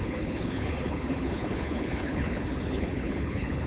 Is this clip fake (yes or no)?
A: yes